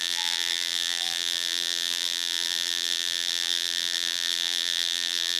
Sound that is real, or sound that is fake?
fake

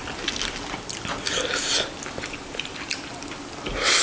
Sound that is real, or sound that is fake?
real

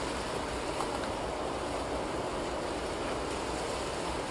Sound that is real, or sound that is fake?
real